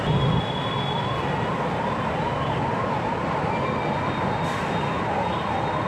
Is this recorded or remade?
recorded